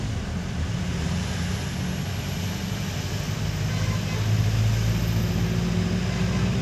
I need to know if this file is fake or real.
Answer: real